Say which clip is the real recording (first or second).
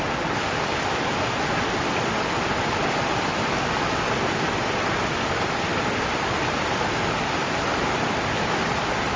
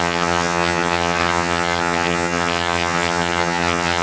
first